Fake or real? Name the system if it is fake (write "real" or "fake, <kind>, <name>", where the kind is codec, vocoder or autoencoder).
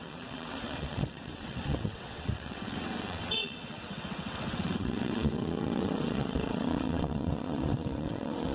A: fake, vocoder, WaveNeXt